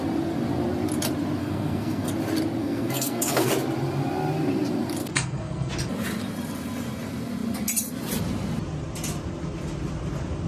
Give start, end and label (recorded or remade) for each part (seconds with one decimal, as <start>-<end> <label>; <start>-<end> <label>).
0.0-1.4 recorded; 1.4-2.1 remade; 2.1-2.6 recorded; 2.6-3.5 remade; 3.5-5.0 recorded; 5.0-5.7 remade; 5.7-10.5 recorded